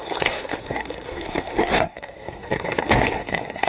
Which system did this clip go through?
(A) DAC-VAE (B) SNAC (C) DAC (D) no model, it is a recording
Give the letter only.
B